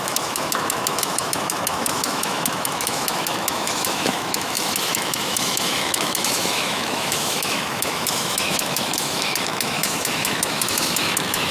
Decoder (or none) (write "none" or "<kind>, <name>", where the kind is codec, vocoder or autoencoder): autoencoder, DAC-VAE